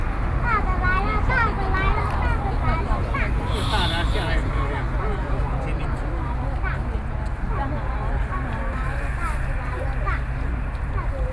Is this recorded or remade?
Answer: recorded